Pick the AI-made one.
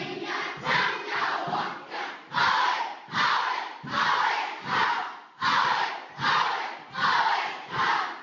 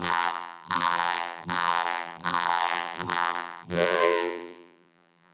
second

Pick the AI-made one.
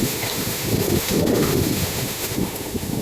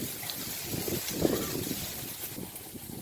first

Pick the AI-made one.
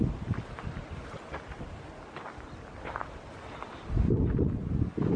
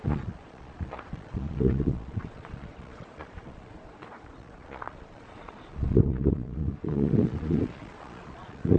second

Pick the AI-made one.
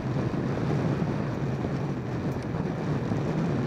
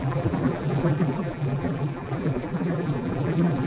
second